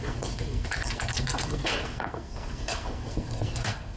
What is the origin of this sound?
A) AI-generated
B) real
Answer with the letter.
A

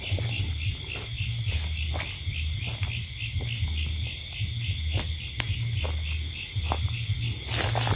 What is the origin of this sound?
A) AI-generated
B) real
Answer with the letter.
B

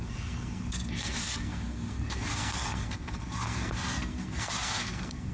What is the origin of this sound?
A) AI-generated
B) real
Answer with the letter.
A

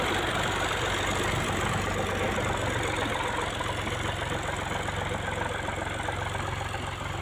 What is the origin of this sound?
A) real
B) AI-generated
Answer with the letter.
A